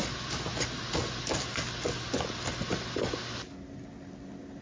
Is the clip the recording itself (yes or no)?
yes